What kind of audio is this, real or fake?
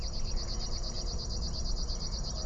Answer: real